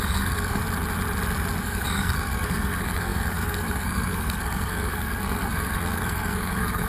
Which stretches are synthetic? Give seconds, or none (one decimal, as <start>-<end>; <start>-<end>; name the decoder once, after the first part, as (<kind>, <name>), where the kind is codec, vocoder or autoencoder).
0.0-0.6 (codec, SNAC); 1.6-6.9